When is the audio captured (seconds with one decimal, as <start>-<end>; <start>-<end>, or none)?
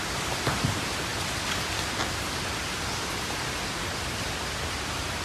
0.0-5.2